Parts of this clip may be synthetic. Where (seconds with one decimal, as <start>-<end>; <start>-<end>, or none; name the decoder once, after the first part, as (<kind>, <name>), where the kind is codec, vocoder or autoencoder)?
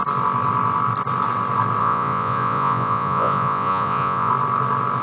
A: 1.8-4.3 (vocoder, Vocos)